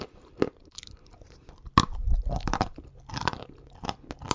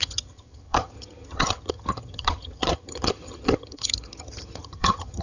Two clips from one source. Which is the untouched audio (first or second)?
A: first